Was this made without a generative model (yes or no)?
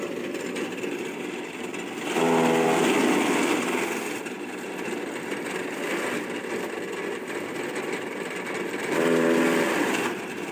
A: no